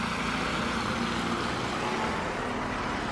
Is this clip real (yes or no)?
yes